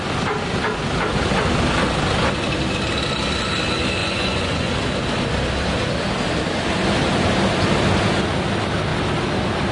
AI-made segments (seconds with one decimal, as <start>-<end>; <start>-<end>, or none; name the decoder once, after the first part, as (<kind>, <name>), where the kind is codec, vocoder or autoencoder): 4.0-4.7 (vocoder, Vocos)